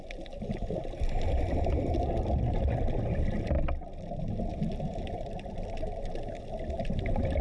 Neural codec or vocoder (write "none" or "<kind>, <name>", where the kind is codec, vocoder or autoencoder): none